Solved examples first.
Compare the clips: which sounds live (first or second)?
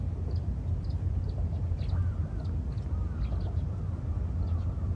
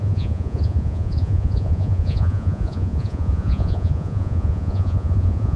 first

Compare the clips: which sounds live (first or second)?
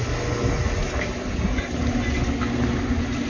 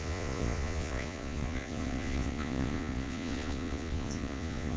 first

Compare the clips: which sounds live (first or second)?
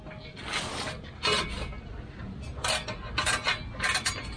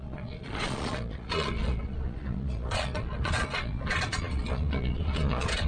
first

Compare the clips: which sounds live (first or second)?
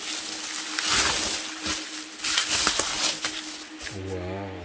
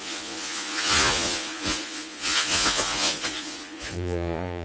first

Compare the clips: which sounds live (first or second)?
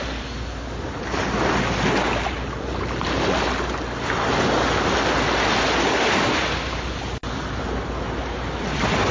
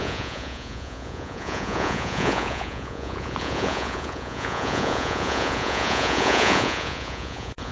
first